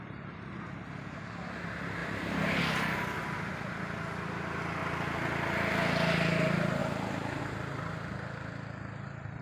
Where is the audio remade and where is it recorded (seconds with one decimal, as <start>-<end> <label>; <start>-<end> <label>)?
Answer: 0.0-2.0 recorded; 2.0-2.6 remade; 2.6-6.8 recorded; 6.8-7.4 remade; 7.4-9.4 recorded